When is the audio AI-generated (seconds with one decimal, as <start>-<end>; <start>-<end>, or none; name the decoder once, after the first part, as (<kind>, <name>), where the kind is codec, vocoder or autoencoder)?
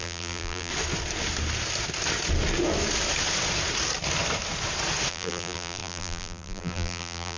0.0-0.7 (vocoder, BigVGAN v2); 5.1-7.4